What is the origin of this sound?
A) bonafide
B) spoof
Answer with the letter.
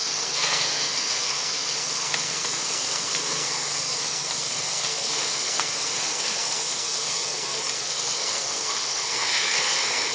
B